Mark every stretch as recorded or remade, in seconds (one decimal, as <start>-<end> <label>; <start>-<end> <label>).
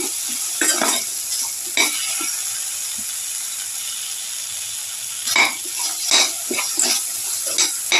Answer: 0.0-8.0 recorded